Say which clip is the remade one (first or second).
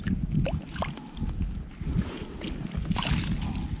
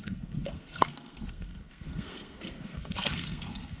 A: second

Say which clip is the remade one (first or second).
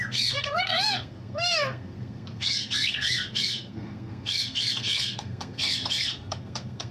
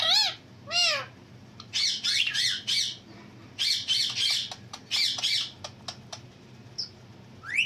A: first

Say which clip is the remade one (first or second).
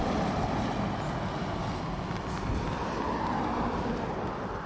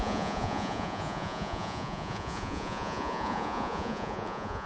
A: second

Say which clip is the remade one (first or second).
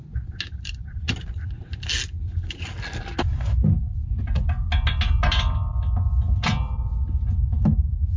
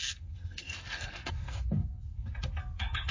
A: second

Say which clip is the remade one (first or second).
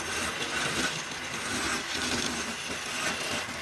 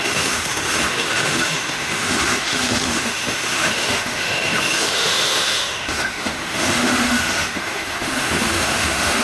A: second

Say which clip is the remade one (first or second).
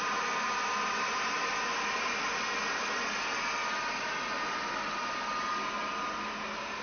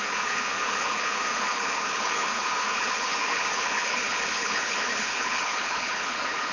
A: second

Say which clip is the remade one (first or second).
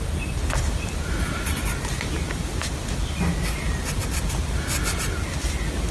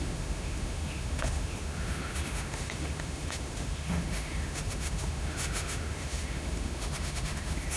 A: second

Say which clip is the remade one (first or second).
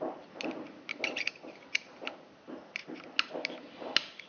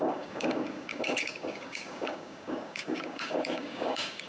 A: second